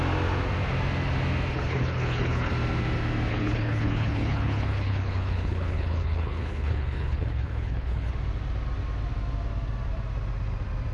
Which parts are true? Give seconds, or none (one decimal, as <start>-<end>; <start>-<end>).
0.0-1.5; 2.5-3.3; 8.1-10.9